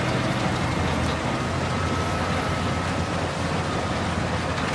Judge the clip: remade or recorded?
recorded